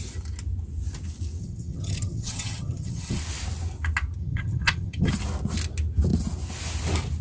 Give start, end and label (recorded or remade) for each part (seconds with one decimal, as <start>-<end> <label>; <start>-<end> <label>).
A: 0.0-1.4 recorded; 1.4-3.2 remade; 3.2-4.2 recorded; 4.2-5.1 remade; 5.1-7.2 recorded